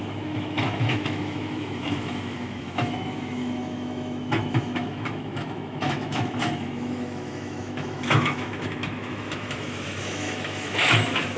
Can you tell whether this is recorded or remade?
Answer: remade